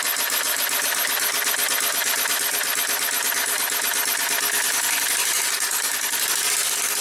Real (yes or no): yes